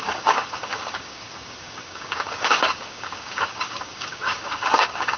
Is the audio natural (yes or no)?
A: no